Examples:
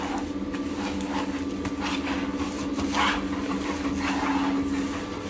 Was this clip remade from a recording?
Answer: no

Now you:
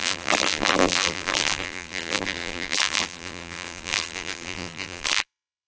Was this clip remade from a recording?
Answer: yes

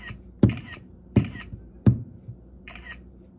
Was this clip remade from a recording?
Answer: yes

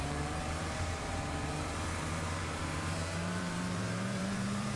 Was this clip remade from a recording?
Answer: yes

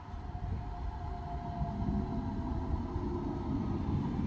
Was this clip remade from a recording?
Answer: no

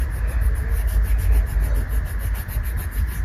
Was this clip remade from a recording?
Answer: no